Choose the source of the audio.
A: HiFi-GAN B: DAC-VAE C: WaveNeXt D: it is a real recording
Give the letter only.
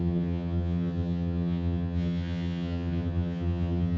A